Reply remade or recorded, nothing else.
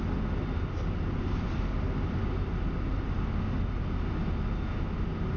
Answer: recorded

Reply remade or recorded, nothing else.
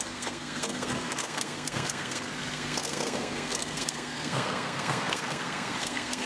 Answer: remade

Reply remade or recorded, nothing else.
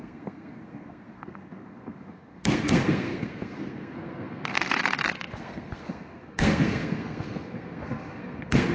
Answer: remade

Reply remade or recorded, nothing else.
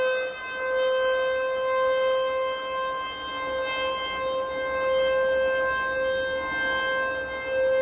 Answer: recorded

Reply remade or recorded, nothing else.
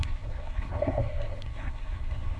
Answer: remade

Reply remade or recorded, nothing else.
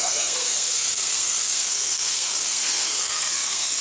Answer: remade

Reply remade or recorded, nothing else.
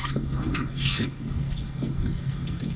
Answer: remade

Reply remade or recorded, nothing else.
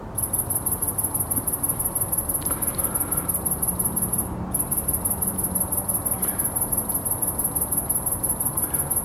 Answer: recorded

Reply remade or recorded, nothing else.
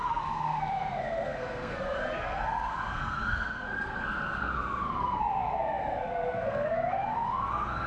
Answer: remade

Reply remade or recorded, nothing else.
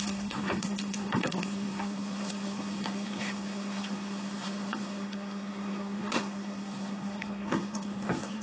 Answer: remade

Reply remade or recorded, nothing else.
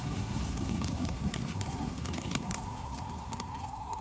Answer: remade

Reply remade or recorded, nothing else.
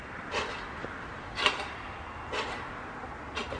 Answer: recorded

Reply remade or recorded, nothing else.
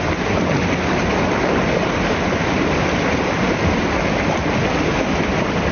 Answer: recorded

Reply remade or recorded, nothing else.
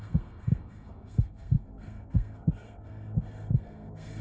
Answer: remade